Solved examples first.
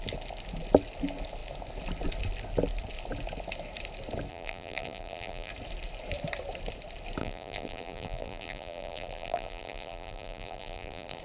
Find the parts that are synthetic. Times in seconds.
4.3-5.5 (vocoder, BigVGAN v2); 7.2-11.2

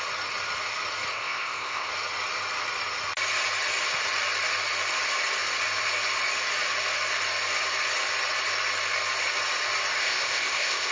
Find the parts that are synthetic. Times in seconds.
1.1-1.9 (codec, ZipCodec); 10.0-10.9

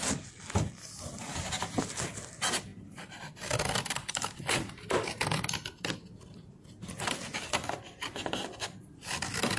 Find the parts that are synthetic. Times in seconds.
none

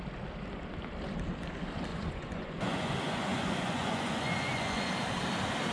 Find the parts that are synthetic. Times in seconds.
1.9-4.9 (vocoder, Vocos)

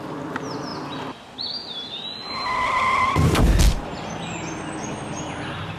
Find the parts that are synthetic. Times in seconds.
none

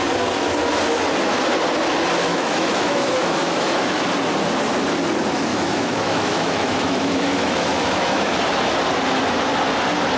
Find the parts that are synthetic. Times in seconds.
2.3-4.0 (autoencoder, DAC-VAE); 5.5-8.4